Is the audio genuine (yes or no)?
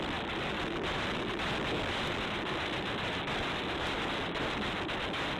no